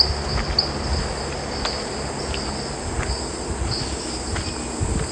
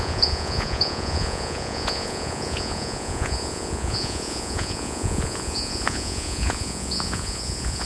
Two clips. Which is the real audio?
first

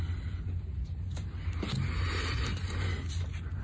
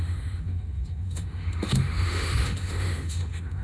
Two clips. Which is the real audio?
first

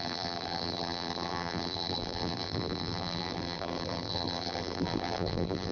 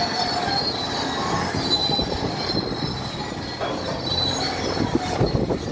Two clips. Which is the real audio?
second